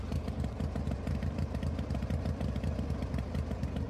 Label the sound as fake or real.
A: real